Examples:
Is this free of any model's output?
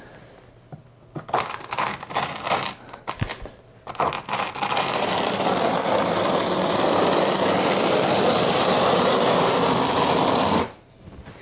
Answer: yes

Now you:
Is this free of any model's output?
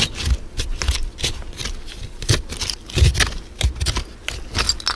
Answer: yes